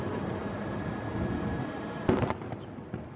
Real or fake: real